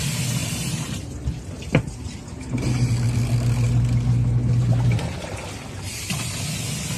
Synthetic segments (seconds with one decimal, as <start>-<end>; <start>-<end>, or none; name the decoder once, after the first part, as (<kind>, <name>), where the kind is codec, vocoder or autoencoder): 0.4-1.2 (vocoder, BigVGAN v2); 1.7-2.9